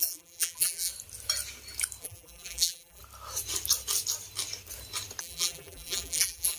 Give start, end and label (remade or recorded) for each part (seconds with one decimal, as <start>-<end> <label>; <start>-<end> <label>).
0.0-0.9 remade; 0.9-2.0 recorded; 2.0-3.0 remade; 3.0-5.2 recorded; 5.2-6.6 remade